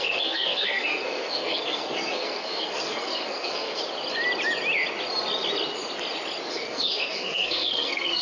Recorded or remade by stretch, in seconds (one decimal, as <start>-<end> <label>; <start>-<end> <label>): 0.0-3.8 remade; 3.8-6.5 recorded; 6.5-8.2 remade